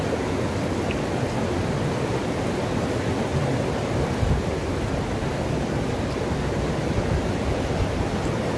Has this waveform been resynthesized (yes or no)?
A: no